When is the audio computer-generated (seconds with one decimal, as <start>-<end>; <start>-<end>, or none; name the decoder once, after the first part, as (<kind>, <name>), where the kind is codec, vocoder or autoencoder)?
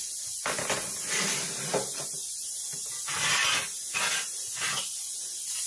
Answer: none